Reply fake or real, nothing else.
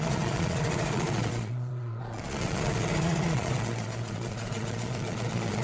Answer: fake